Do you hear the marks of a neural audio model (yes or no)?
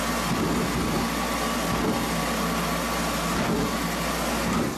no